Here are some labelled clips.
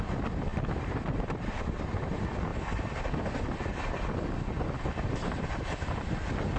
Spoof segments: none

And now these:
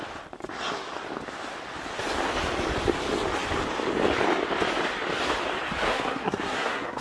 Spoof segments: 5.9-7.0 (codec, SNAC)